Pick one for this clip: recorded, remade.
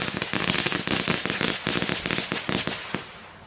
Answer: recorded